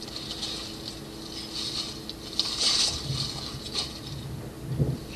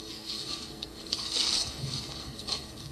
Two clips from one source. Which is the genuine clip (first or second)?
first